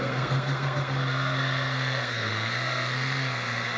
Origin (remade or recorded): remade